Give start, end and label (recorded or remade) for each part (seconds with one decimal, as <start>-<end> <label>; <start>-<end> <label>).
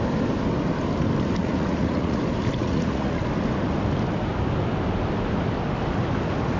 0.0-1.4 recorded; 1.4-2.2 remade; 2.2-2.6 recorded; 2.6-3.2 remade; 3.2-6.6 recorded